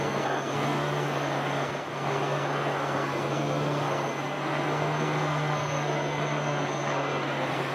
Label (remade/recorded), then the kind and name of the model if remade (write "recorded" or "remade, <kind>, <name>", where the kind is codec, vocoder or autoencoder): remade, codec, SNAC